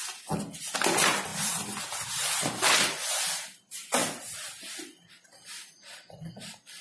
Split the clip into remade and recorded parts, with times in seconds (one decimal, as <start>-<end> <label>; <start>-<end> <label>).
0.0-6.8 recorded